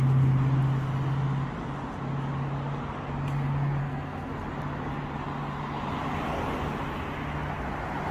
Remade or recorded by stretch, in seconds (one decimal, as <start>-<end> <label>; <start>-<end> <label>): 0.0-3.8 recorded; 3.8-4.3 remade; 4.3-8.1 recorded